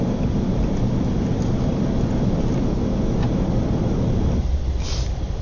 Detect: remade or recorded recorded